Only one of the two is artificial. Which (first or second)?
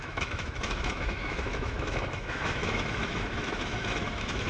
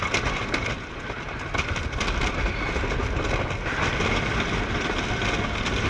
first